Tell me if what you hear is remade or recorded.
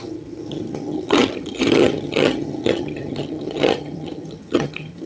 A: remade